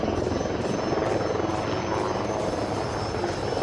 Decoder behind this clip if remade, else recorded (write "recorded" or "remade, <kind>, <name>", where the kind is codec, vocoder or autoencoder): recorded